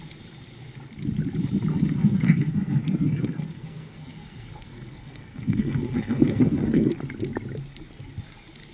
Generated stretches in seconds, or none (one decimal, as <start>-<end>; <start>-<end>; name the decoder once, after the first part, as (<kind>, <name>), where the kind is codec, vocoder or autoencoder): 1.7-6.9 (codec, SNAC)